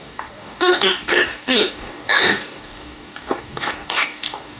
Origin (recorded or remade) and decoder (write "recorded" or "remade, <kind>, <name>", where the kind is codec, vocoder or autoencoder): remade, codec, DAC